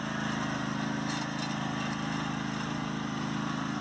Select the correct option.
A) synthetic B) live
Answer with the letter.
B